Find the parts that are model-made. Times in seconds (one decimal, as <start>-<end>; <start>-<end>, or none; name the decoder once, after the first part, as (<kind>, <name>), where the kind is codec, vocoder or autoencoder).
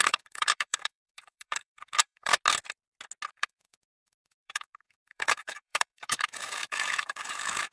0.0-2.3 (codec, DAC); 3.3-7.7